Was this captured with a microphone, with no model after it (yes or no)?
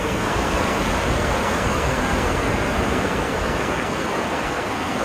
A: no